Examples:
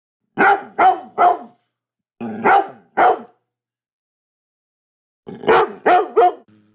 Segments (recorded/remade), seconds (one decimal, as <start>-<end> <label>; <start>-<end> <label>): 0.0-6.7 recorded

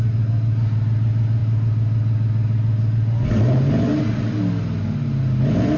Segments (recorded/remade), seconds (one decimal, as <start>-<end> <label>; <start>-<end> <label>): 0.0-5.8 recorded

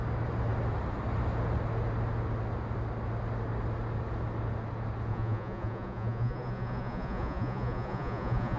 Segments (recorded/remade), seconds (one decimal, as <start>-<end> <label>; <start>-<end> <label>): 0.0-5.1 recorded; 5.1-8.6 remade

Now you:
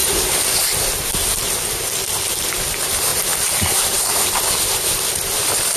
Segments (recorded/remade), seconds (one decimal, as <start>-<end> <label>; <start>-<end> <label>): 0.0-1.9 remade; 1.9-3.1 recorded; 3.1-4.0 remade; 4.0-5.8 recorded

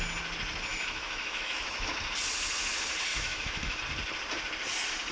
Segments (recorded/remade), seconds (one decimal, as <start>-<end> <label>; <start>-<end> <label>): 0.0-0.7 recorded; 0.7-1.9 remade; 1.9-3.1 recorded; 3.1-3.8 remade; 3.8-5.1 recorded